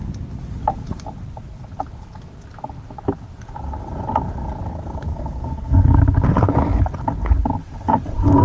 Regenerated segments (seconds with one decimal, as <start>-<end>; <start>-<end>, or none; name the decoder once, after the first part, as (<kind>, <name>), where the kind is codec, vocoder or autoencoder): 4.7-6.0 (codec, SNAC)